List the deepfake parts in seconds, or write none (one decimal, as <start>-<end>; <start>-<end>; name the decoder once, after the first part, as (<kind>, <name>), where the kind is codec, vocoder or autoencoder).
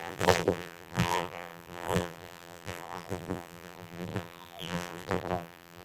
0.0-5.8 (vocoder, BigVGAN v2)